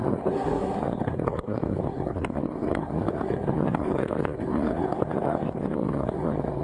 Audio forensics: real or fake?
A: fake